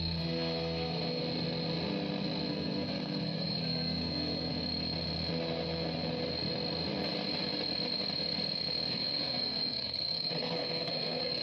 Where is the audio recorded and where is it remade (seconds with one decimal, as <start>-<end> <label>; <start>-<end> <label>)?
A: 0.0-1.2 remade; 1.2-2.5 recorded; 2.5-4.5 remade; 4.5-8.9 recorded; 8.9-11.4 remade